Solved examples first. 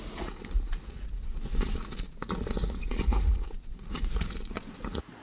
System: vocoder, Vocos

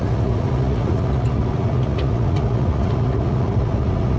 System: vocoder, Vocos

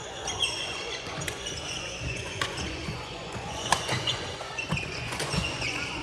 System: vocoder, Vocos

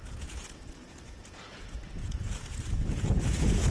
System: vocoder, Vocos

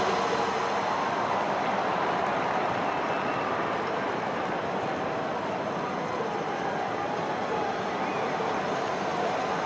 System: none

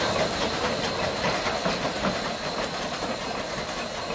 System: none